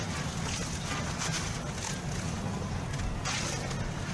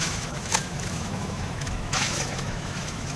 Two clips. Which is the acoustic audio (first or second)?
first